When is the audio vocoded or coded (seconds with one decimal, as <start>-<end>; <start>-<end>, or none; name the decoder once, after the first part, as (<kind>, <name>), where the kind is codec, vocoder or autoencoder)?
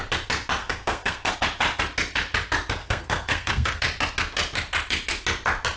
0.6-1.3 (codec, SNAC); 2.8-3.8